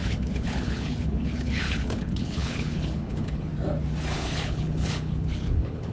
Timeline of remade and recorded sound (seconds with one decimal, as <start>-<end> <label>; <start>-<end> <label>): 0.0-3.5 remade; 3.5-4.1 recorded; 4.1-5.9 remade